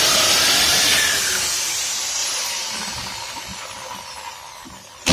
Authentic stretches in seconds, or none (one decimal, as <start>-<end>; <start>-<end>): 0.0-5.1